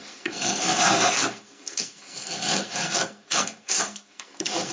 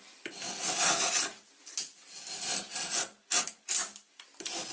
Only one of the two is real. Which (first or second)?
second